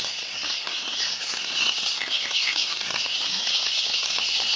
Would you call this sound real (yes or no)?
no